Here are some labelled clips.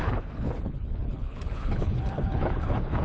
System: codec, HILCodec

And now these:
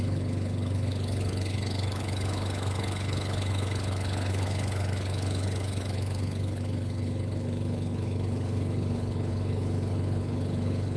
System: codec, HILCodec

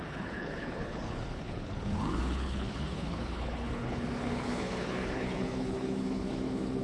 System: codec, HILCodec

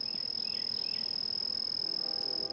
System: none